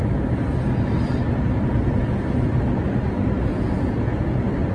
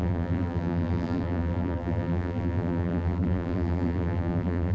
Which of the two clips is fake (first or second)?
second